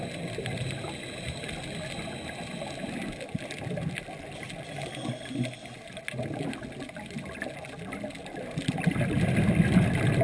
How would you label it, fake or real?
real